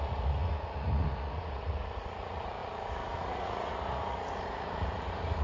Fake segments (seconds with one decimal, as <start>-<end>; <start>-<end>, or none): 0.0-5.4